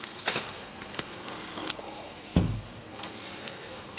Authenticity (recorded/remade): remade